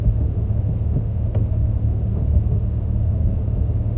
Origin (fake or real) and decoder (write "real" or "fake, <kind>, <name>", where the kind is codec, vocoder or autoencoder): fake, autoencoder, DAC-VAE